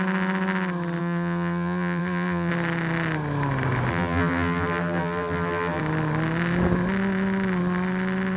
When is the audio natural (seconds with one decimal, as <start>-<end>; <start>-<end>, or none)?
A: 0.0-1.0; 2.5-3.9; 5.8-8.4